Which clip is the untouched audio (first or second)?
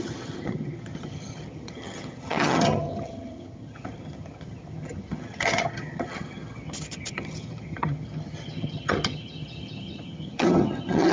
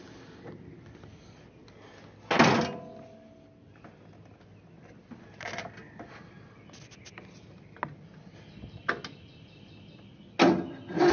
second